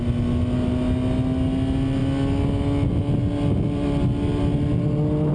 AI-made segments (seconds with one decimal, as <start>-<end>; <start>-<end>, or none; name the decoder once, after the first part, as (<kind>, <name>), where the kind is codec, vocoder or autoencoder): none